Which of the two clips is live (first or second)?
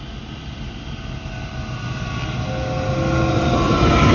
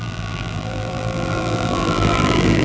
first